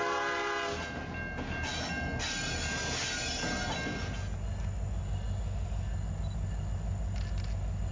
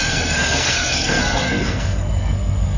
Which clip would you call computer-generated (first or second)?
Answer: second